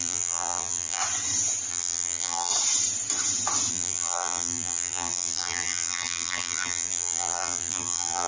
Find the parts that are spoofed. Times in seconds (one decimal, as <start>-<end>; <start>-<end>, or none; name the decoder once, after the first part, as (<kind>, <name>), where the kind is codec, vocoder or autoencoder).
0.0-1.0 (vocoder, BigVGAN v2); 1.7-2.5; 3.7-8.3